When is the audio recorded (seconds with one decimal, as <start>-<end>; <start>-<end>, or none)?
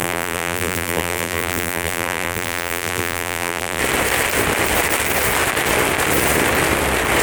3.8-7.2